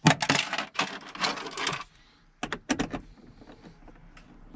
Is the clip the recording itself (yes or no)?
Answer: yes